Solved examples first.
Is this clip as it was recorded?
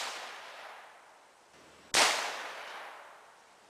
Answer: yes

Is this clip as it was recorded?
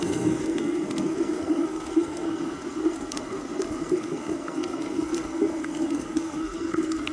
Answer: no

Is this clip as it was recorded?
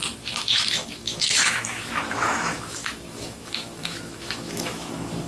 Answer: no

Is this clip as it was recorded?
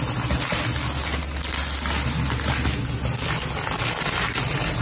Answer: yes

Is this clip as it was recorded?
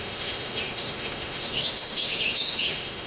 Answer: no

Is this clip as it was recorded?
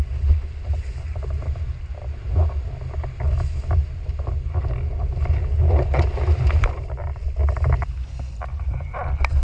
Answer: yes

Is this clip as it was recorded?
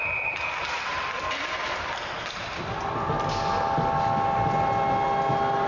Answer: yes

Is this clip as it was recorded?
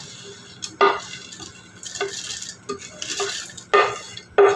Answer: yes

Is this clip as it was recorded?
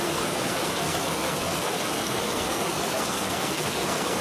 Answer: no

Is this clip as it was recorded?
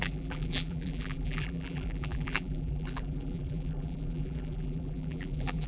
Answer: no